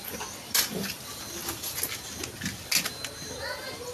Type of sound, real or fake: real